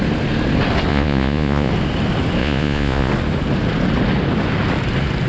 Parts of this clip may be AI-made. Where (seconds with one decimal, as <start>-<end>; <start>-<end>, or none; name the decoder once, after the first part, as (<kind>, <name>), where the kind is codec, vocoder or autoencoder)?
0.9-1.7 (vocoder, Vocos); 2.4-3.1